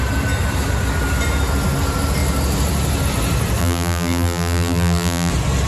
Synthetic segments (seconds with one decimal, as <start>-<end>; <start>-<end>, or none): 3.6-5.3

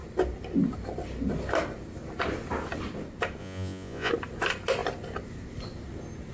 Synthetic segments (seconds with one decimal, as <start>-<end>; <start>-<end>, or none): 3.4-4.1

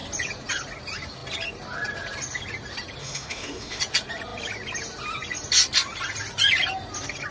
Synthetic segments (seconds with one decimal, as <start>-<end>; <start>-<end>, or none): 3.0-3.8

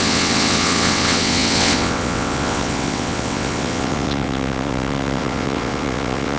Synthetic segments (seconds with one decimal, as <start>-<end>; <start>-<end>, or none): 0.0-6.4

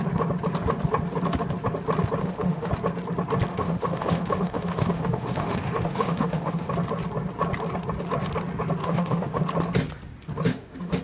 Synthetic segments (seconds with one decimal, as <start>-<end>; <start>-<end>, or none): 2.2-2.7; 3.5-6.7; 8.8-9.4; 10.5-11.0

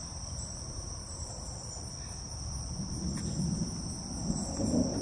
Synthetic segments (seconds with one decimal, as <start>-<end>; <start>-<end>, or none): 0.0-3.0

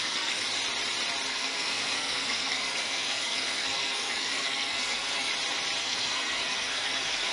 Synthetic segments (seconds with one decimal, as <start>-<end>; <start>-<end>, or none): 0.0-0.4; 1.3-5.3; 5.8-7.3